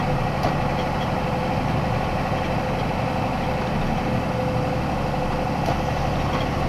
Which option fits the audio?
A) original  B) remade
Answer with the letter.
A